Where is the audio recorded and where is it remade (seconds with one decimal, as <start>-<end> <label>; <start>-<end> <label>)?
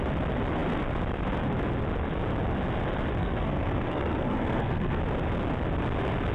0.0-3.2 recorded; 3.2-5.0 remade; 5.0-6.3 recorded